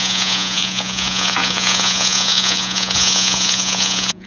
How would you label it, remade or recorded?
remade